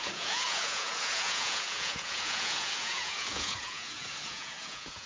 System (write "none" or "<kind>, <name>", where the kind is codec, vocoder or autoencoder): vocoder, Vocos